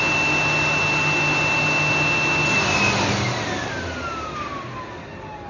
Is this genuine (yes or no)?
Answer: yes